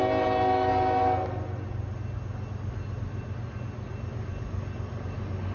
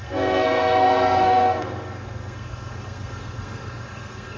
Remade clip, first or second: second